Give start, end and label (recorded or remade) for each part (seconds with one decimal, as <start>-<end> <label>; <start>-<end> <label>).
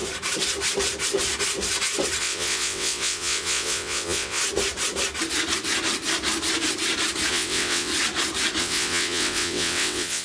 0.0-2.2 recorded; 2.2-4.4 remade; 4.4-7.3 recorded; 7.3-7.9 remade; 7.9-8.6 recorded; 8.6-10.2 remade